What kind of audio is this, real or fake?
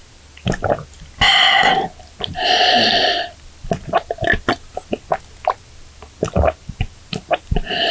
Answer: real